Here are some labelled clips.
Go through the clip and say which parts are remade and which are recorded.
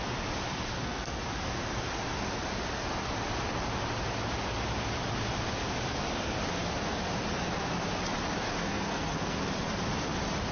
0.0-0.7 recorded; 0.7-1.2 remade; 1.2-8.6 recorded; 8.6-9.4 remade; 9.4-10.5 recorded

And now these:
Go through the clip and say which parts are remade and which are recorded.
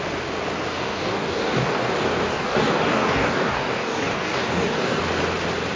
0.0-0.7 recorded; 0.7-1.9 remade; 1.9-2.3 recorded; 2.3-5.0 remade; 5.0-5.8 recorded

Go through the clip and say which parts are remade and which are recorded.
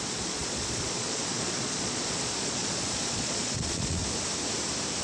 0.0-4.0 remade; 4.0-5.0 recorded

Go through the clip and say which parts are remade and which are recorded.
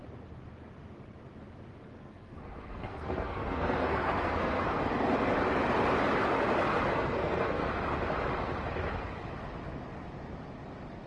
0.0-2.0 recorded; 2.0-4.8 remade; 4.8-6.9 recorded; 6.9-7.8 remade; 7.8-11.1 recorded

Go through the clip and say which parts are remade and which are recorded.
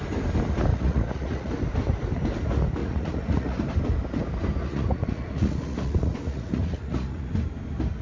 0.0-0.7 recorded; 0.7-1.5 remade; 1.5-2.8 recorded; 2.8-3.6 remade; 3.6-4.6 recorded; 4.6-7.3 remade; 7.3-8.0 recorded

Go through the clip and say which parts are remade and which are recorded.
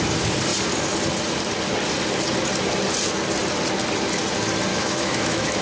0.0-4.7 recorded; 4.7-5.6 remade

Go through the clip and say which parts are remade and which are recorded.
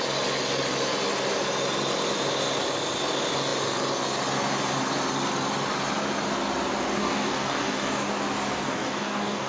0.0-7.0 recorded; 7.0-8.1 remade; 8.1-8.6 recorded; 8.6-9.5 remade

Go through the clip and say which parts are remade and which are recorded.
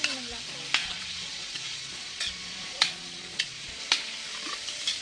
0.0-0.8 recorded; 0.8-3.8 remade; 3.8-5.0 recorded